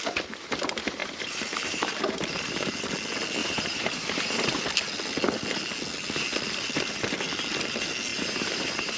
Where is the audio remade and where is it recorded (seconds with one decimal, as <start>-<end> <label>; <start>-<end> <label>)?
0.0-1.0 recorded; 1.0-2.9 remade; 2.9-3.4 recorded; 3.4-4.6 remade; 4.6-8.1 recorded; 8.1-9.0 remade

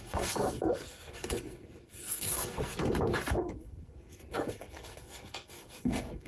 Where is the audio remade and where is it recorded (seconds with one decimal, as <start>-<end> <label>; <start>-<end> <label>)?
0.0-2.8 remade; 2.8-3.4 recorded; 3.4-6.3 remade

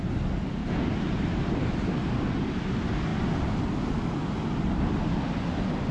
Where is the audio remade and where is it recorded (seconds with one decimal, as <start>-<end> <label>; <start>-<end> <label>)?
0.0-0.6 recorded; 0.6-2.1 remade; 2.1-5.9 recorded